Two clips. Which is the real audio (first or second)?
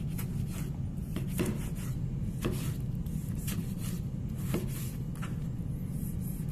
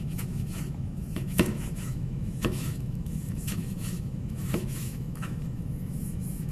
first